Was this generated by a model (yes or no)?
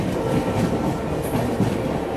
no